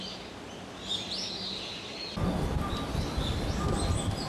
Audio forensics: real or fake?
real